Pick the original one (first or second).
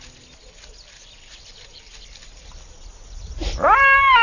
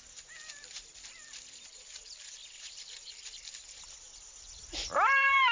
first